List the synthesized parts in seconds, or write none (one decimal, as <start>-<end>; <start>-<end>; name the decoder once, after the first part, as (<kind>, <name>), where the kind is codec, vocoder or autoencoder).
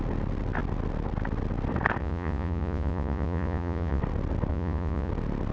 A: 2.0-4.0 (vocoder, Vocos); 4.5-5.1